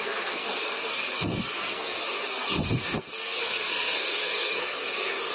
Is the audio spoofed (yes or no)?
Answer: yes